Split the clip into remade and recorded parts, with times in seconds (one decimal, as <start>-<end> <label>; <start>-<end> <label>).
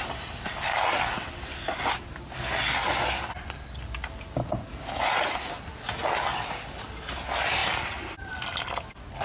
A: 0.0-9.2 recorded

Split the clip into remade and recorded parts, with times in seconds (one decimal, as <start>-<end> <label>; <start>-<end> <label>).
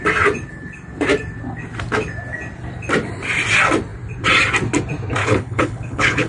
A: 0.0-5.2 recorded; 5.2-6.3 remade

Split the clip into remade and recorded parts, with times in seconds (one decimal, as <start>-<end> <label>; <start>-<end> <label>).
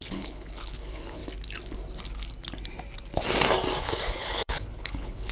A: 0.0-1.2 remade; 1.2-3.8 recorded; 3.8-5.3 remade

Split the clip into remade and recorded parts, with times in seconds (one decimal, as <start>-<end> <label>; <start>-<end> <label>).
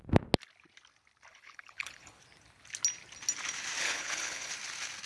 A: 0.0-1.3 recorded; 1.3-2.2 remade; 2.2-3.8 recorded; 3.8-4.5 remade; 4.5-5.1 recorded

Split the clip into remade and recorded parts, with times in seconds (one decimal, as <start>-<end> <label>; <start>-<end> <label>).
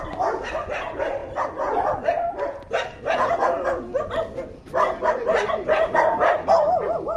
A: 0.0-7.2 recorded